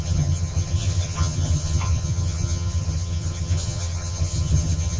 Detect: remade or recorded remade